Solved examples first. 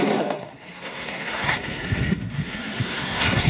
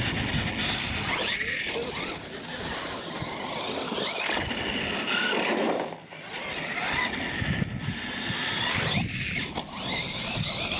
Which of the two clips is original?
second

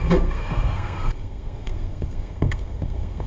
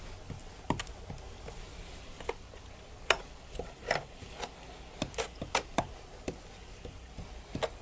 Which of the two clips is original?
second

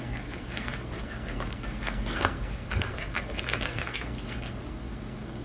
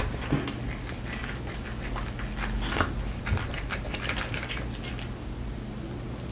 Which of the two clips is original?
second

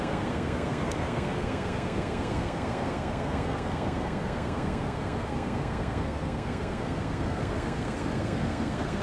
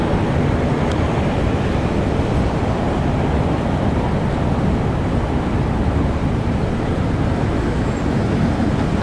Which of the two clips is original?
second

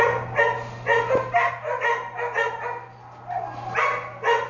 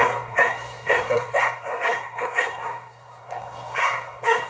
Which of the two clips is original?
first